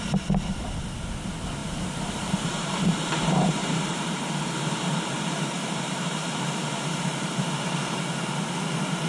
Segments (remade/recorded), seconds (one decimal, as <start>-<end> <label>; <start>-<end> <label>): 0.0-1.6 recorded; 1.6-6.4 remade; 6.4-9.1 recorded